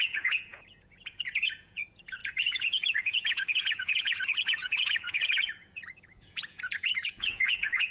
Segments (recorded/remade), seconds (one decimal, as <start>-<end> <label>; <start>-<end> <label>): 0.0-7.9 remade